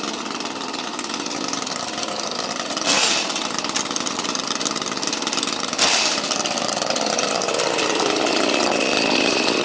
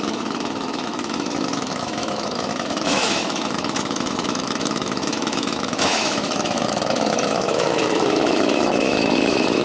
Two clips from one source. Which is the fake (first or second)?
second